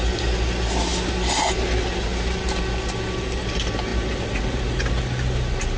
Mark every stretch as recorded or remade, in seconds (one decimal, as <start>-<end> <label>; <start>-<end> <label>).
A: 0.0-5.8 recorded